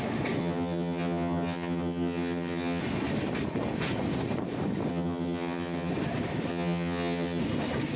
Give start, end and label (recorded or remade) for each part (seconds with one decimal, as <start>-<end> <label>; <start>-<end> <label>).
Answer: 0.0-0.4 recorded; 0.4-2.8 remade; 2.8-4.9 recorded; 4.9-5.9 remade; 5.9-6.5 recorded; 6.5-7.4 remade; 7.4-8.0 recorded